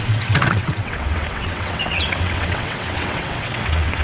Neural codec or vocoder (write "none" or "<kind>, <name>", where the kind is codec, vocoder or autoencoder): vocoder, WaveNeXt